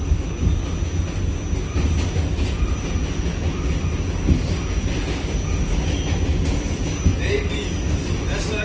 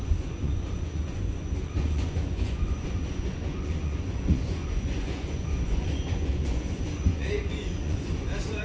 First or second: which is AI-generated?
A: second